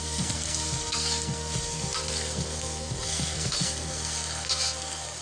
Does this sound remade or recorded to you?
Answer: remade